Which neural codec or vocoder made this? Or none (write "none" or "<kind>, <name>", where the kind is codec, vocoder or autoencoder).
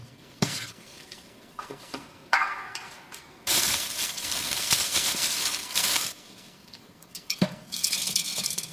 codec, SNAC